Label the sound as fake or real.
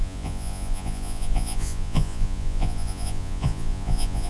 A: fake